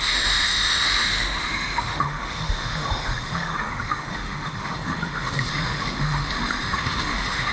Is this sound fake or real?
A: fake